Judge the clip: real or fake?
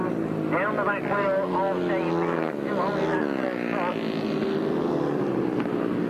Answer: real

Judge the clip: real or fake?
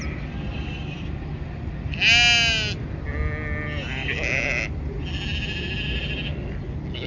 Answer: real